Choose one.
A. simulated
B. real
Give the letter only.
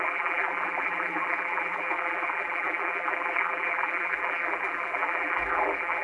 A